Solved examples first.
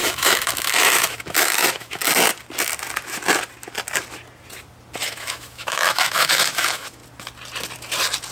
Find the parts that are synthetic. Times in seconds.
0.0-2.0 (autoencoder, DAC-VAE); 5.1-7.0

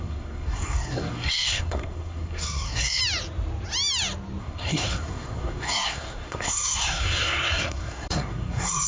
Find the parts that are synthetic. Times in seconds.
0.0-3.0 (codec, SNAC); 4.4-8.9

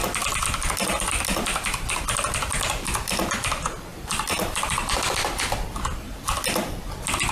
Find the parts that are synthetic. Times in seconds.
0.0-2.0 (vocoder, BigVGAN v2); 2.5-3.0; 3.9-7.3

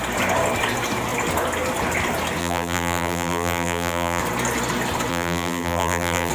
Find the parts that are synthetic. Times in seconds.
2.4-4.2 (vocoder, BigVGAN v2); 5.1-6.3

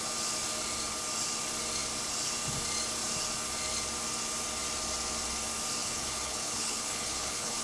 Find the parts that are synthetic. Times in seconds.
5.8-7.6 (codec, HILCodec)

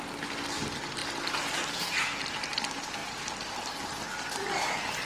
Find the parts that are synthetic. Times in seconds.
none

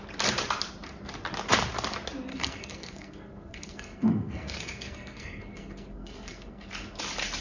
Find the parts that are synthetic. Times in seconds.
2.3-6.7 (codec, SNAC)

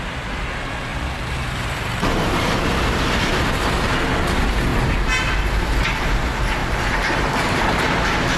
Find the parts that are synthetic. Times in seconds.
0.9-3.9 (vocoder, BigVGAN v2); 6.6-7.8